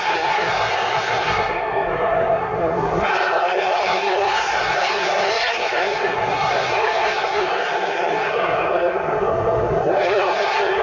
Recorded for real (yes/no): no